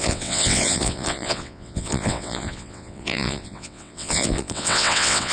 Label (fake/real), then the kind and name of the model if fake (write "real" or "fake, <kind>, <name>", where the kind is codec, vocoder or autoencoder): fake, vocoder, WaveNeXt